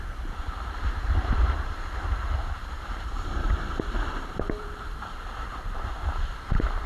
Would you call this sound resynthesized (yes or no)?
yes